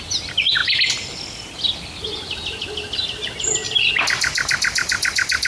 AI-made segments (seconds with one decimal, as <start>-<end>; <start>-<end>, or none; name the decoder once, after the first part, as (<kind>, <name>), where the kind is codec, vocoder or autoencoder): none